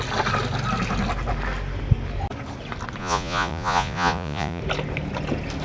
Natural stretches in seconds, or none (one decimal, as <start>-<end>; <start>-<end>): 0.0-3.0; 4.6-5.6